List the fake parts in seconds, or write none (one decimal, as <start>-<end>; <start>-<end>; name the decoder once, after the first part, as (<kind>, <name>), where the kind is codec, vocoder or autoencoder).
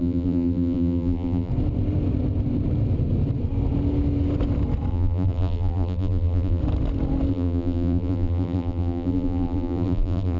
0.0-1.5 (vocoder, BigVGAN v2); 4.9-6.6; 7.3-10.4